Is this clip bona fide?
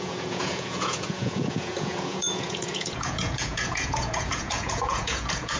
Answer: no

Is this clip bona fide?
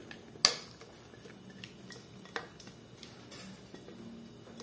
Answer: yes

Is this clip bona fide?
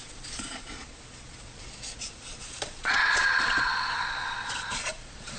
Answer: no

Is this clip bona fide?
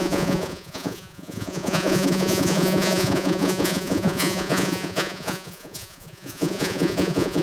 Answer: no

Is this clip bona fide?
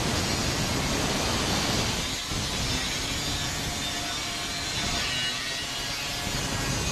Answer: yes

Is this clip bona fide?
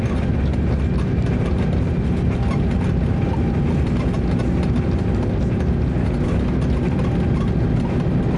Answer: yes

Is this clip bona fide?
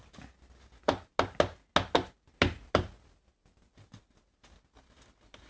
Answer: yes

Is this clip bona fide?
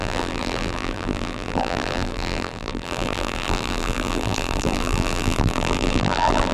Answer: no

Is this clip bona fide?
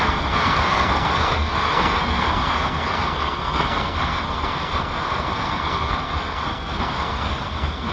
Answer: no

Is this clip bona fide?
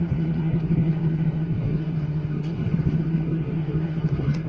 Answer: no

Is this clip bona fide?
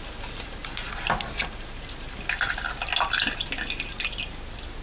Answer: yes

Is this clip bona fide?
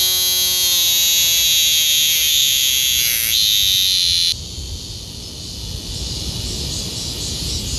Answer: yes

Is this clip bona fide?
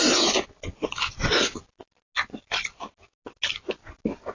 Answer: yes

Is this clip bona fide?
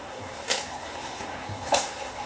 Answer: no